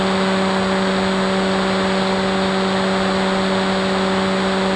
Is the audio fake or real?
real